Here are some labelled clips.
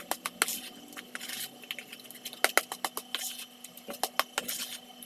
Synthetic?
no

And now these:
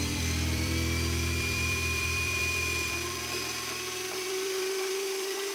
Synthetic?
yes